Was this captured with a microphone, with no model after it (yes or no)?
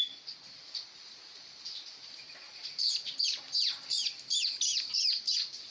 yes